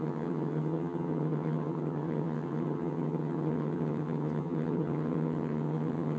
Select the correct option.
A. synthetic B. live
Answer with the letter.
A